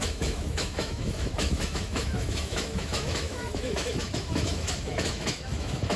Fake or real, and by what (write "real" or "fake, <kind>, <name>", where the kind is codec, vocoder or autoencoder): fake, autoencoder, DAC-VAE